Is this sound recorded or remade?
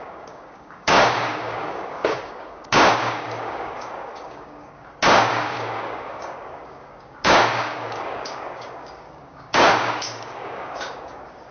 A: remade